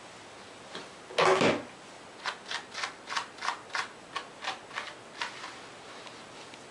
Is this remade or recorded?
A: recorded